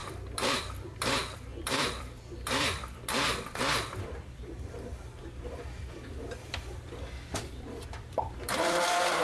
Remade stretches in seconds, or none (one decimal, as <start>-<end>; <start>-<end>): 0.0-9.2